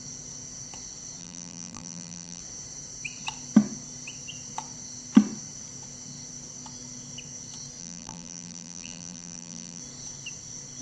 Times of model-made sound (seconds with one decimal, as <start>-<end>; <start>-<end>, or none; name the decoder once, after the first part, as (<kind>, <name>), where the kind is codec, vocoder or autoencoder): 1.2-2.4 (vocoder, BigVGAN v2); 7.8-9.8